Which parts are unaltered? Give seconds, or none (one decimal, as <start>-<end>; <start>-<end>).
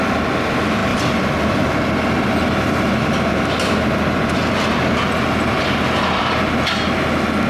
0.0-0.8; 4.7-7.5